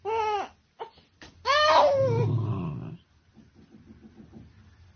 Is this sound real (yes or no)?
yes